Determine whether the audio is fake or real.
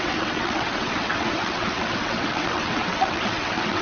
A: fake